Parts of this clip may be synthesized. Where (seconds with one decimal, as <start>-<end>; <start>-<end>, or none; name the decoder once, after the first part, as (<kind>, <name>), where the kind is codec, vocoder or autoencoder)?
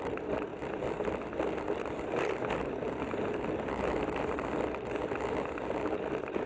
none